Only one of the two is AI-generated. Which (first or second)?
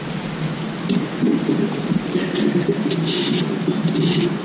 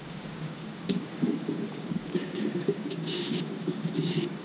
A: second